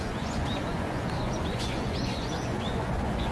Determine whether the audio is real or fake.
fake